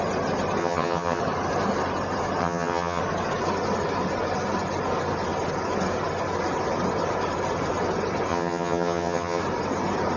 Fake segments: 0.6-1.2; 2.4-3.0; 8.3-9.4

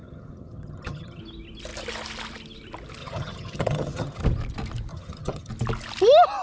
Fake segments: 0.0-1.2; 3.0-4.2; 4.9-5.5

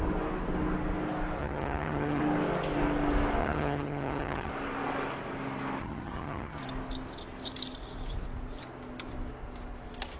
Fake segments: 1.4-2.2; 3.4-4.5; 5.8-6.6

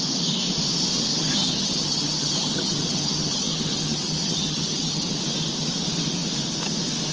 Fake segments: 1.1-5.2

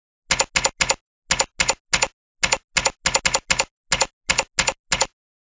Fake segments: none

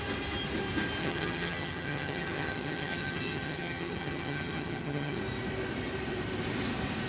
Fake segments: 1.0-5.2

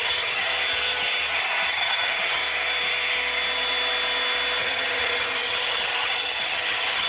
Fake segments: 0.0-0.5; 1.7-2.4; 4.6-7.1